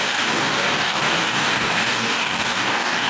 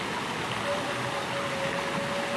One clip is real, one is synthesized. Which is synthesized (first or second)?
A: first